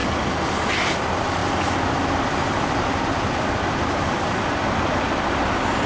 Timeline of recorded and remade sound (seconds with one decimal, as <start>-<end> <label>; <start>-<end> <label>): 0.0-1.4 recorded; 1.4-3.8 remade; 3.8-5.9 recorded